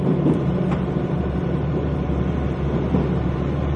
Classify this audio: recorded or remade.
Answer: remade